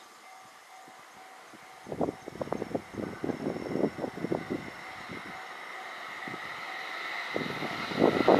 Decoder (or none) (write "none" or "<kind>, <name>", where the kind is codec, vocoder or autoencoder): none